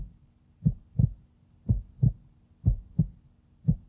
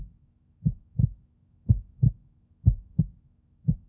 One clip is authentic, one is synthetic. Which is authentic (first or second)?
first